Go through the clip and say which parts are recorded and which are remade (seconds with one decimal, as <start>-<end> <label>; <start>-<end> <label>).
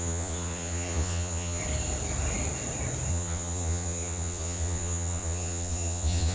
0.0-1.6 remade; 1.6-3.1 recorded; 3.1-6.3 remade